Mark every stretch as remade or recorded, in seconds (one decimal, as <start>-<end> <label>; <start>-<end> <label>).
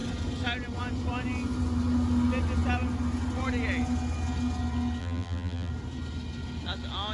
0.0-5.0 recorded; 5.0-5.7 remade; 5.7-7.1 recorded